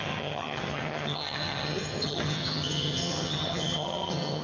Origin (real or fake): fake